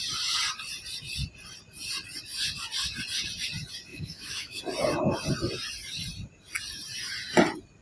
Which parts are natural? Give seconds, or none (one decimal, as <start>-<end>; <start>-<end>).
0.0-3.9; 4.6-7.8